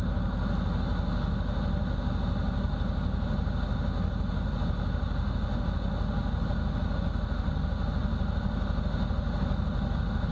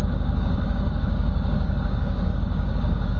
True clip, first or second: first